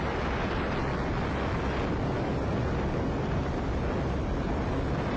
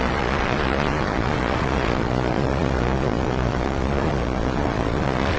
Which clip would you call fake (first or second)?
second